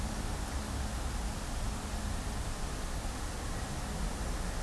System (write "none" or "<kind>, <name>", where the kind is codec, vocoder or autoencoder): none